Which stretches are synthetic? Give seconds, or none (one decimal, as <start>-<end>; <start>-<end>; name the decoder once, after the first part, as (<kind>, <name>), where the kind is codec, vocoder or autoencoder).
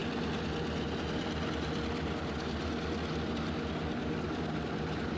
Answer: none